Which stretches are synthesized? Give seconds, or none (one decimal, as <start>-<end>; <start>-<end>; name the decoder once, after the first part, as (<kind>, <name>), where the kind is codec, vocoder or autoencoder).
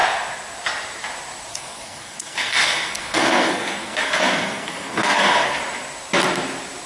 1.5-5.6 (codec, SNAC)